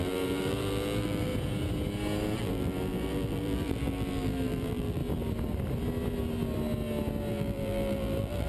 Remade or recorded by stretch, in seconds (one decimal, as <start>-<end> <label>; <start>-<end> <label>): 0.0-1.3 remade; 1.3-2.4 recorded; 2.4-5.0 remade; 5.0-7.3 recorded; 7.3-8.5 remade

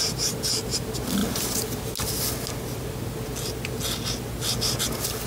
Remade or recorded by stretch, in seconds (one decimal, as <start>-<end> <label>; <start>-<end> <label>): 0.0-5.3 recorded

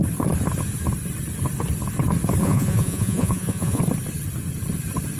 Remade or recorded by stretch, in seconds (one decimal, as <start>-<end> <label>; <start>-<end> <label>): 0.0-2.4 recorded; 2.4-3.8 remade; 3.8-5.2 recorded

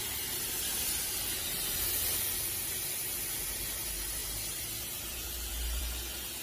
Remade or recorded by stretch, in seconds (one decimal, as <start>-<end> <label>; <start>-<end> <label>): 0.0-4.2 recorded; 4.2-5.8 remade; 5.8-6.4 recorded

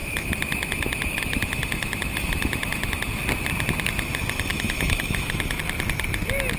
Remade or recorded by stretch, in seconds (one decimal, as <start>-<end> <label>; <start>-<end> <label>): 0.0-3.2 remade; 3.2-4.5 recorded; 4.5-5.6 remade; 5.6-6.6 recorded